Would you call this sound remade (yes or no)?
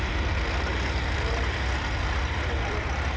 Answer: yes